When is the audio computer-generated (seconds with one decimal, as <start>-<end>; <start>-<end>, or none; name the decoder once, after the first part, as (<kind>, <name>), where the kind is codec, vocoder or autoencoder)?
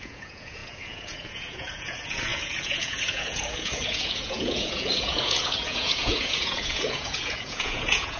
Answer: 0.0-8.2 (vocoder, Vocos)